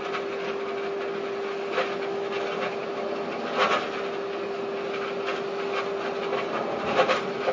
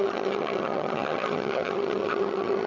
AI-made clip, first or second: second